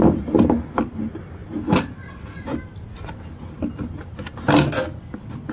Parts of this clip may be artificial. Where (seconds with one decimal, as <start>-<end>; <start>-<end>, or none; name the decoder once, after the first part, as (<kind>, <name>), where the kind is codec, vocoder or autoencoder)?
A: none